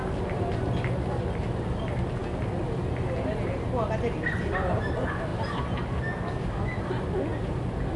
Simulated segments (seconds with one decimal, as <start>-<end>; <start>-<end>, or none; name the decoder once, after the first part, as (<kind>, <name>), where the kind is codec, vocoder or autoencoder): none